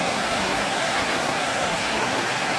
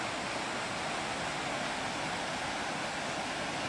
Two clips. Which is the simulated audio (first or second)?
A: first